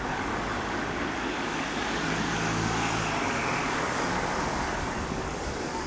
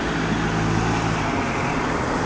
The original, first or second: second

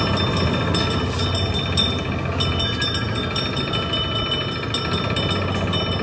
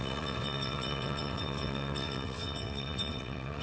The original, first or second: first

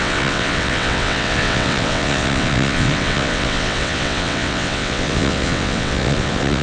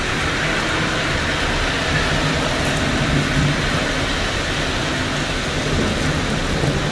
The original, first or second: second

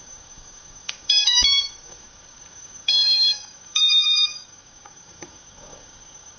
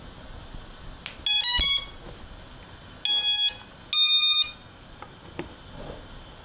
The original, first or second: second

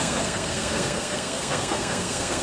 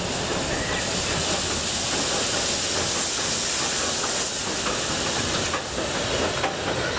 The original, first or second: second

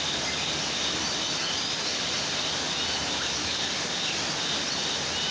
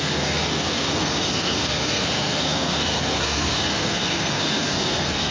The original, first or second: first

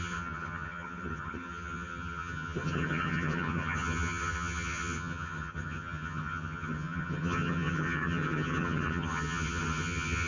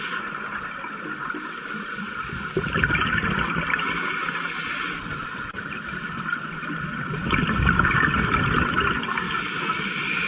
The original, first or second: second